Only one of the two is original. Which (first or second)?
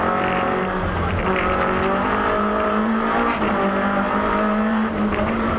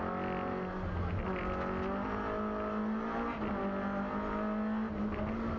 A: second